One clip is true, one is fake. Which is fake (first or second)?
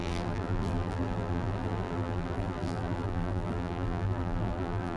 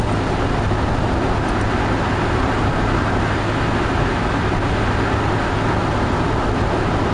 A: first